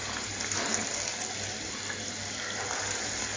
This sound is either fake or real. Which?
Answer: real